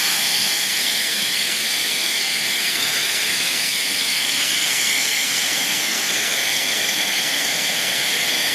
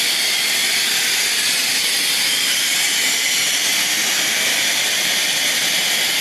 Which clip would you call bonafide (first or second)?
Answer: second